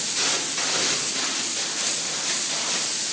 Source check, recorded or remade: recorded